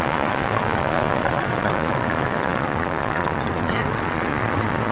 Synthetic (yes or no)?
yes